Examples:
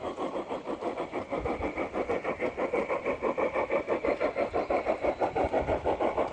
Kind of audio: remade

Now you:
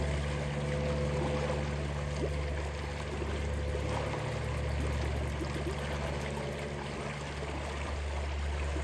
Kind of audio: recorded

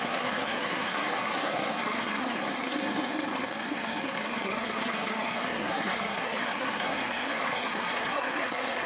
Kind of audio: remade